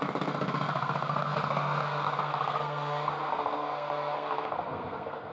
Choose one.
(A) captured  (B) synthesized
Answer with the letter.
B